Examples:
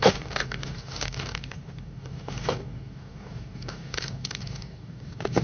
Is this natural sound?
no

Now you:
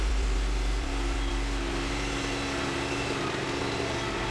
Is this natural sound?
yes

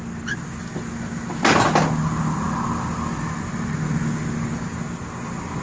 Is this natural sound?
yes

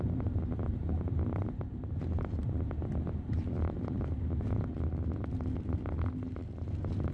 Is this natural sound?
yes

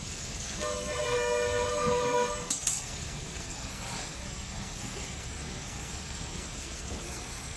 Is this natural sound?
no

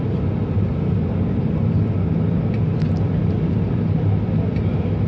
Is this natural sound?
yes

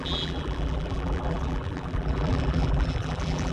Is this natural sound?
no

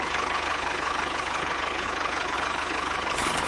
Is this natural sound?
no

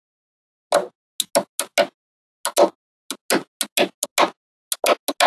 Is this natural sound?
yes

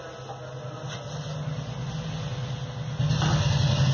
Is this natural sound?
yes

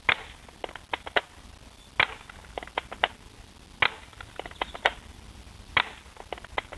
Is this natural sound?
yes